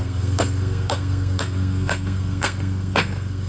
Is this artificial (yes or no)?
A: yes